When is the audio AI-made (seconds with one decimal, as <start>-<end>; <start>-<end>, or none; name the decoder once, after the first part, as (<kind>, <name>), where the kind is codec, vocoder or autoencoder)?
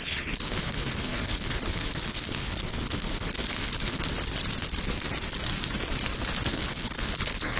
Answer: 0.0-4.1 (codec, HILCodec); 6.5-7.6